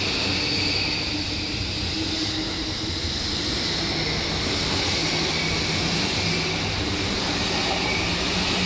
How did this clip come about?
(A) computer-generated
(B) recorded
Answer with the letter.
B